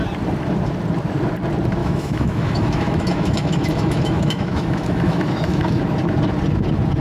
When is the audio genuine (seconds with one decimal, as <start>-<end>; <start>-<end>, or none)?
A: 0.0-1.8; 5.8-7.0